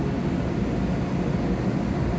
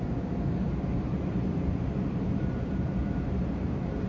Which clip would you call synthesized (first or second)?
second